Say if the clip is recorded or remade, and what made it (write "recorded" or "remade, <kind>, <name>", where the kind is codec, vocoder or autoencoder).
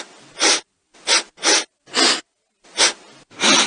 recorded